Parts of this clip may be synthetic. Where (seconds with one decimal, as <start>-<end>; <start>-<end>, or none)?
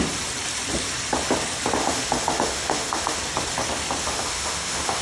1.8-3.2; 4.0-5.0